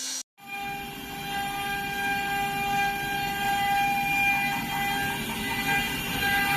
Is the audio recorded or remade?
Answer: recorded